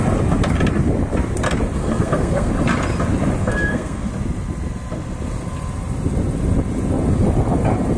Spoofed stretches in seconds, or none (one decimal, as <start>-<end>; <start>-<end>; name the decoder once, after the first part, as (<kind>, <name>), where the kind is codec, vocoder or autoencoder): 1.8-2.5 (codec, SNAC); 3.4-4.1